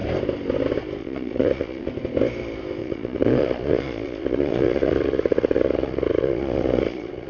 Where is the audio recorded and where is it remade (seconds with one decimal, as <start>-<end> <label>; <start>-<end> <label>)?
0.0-1.0 recorded; 1.0-1.9 remade; 1.9-2.8 recorded; 2.8-7.3 remade